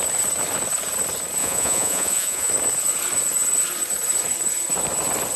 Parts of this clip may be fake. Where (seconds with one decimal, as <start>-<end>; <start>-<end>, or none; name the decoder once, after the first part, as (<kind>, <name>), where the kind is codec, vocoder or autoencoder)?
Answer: 1.4-2.5 (vocoder, Vocos)